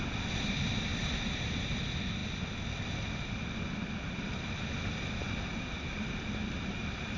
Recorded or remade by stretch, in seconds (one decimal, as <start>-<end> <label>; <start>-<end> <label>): 0.0-0.9 recorded; 0.9-1.5 remade; 1.5-7.2 recorded